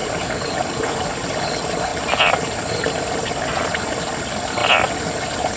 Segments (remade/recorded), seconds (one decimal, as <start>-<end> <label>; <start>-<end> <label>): 0.0-1.0 remade; 1.0-5.6 recorded

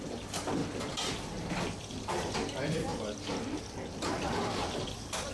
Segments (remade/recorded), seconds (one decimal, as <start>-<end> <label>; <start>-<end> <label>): 0.0-0.6 remade; 0.6-2.1 recorded; 2.1-2.9 remade; 2.9-3.4 recorded; 3.4-5.3 remade

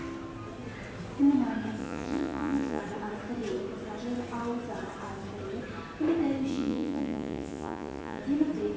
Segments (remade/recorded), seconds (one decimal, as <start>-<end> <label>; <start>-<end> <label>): 0.0-1.8 recorded; 1.8-2.8 remade; 2.8-6.5 recorded; 6.5-8.2 remade; 8.2-8.8 recorded

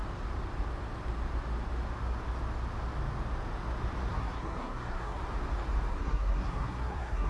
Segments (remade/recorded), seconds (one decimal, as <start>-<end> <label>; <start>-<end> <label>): 0.0-4.1 recorded; 4.1-5.2 remade; 5.2-5.9 recorded; 5.9-7.3 remade

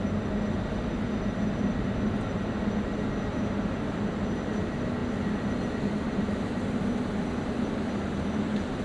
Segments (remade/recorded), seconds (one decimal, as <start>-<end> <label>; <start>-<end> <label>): 0.0-8.8 recorded

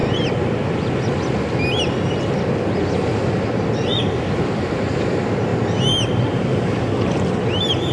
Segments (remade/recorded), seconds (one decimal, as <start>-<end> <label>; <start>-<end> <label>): 0.0-7.9 recorded

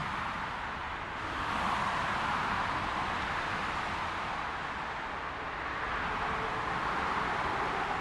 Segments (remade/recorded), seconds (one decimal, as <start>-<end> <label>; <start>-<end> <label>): 0.0-8.0 recorded